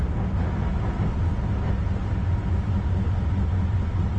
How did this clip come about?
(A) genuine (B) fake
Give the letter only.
A